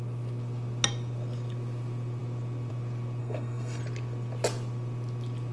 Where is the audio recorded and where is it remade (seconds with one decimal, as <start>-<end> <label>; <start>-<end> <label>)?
0.0-3.2 recorded; 3.2-3.8 remade; 3.8-5.5 recorded